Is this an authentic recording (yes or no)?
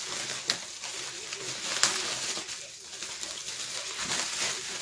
yes